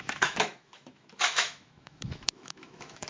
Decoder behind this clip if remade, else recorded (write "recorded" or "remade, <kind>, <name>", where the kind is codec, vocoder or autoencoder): remade, autoencoder, DAC-VAE